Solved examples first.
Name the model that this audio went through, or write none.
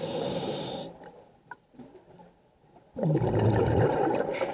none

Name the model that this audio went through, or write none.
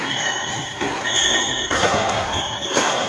codec, SNAC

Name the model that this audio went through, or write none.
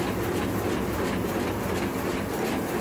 none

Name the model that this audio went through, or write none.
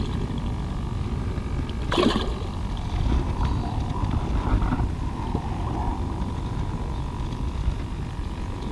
none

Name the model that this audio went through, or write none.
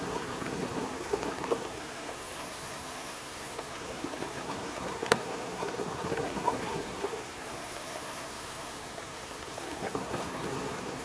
codec, SNAC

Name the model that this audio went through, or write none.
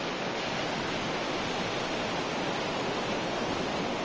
none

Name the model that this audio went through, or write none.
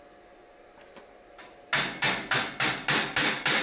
none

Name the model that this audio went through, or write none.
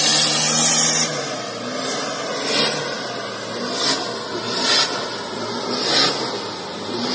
none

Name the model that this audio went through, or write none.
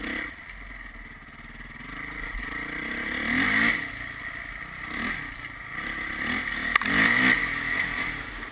none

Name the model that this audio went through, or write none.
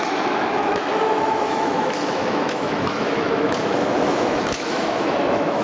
autoencoder, DAC-VAE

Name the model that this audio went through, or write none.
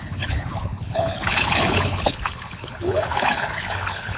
codec, HILCodec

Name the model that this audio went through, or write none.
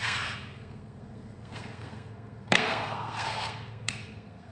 codec, SNAC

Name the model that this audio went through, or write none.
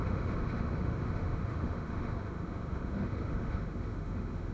autoencoder, DAC-VAE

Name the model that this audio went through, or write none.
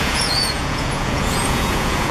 vocoder, Vocos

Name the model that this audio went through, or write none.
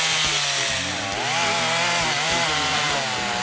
none